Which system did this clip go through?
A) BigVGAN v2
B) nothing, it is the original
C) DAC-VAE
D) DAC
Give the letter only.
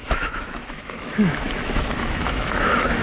C